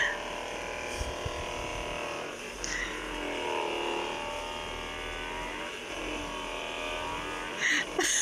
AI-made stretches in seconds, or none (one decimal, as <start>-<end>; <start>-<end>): none